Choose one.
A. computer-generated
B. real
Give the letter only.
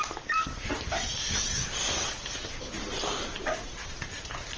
A